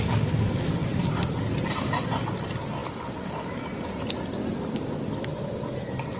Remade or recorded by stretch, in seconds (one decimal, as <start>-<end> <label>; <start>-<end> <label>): 0.0-2.8 recorded; 2.8-5.2 remade; 5.2-6.2 recorded